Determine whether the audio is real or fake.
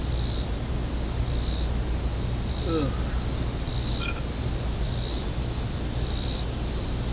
real